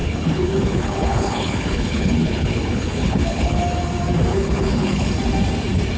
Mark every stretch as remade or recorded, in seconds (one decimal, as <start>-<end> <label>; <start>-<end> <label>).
0.0-3.6 remade; 3.6-4.3 recorded; 4.3-5.1 remade; 5.1-6.0 recorded